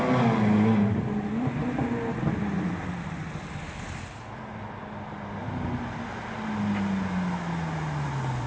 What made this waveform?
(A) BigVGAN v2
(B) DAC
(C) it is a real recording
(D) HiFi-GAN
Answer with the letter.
C